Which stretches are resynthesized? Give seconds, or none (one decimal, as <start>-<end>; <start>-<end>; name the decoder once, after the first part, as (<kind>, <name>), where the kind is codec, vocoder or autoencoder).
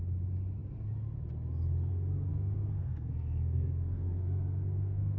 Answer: 2.3-5.2 (codec, SNAC)